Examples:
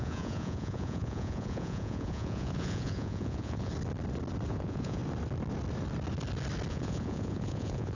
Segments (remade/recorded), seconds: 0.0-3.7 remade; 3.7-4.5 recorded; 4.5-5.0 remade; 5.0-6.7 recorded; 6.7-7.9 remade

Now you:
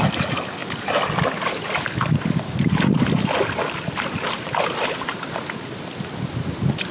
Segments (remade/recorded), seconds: 0.0-6.9 recorded

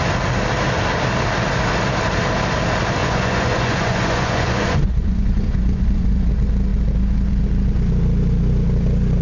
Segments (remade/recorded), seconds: 0.0-3.0 recorded; 3.0-6.3 remade; 6.3-9.2 recorded

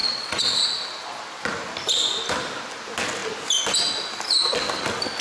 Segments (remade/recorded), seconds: 0.0-0.6 remade; 0.6-5.2 recorded

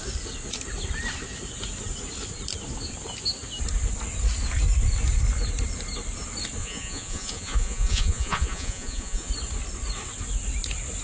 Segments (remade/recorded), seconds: 0.0-6.6 recorded; 6.6-9.3 remade; 9.3-11.0 recorded

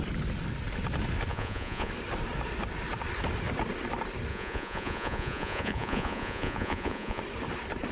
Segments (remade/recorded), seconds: 0.0-1.3 recorded; 1.3-1.9 remade; 1.9-4.3 recorded; 4.3-7.2 remade; 7.2-7.9 recorded

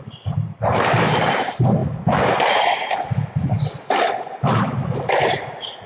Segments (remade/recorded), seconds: 0.0-5.9 recorded